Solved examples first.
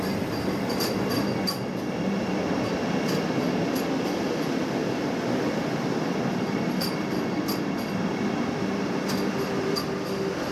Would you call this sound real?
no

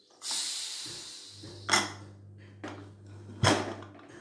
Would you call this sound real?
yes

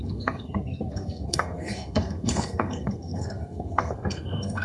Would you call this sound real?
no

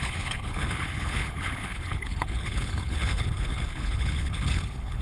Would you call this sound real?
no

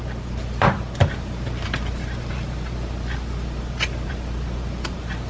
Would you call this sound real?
no